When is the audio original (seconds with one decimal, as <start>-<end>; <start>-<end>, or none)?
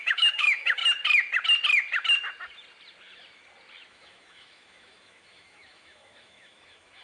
0.8-3.9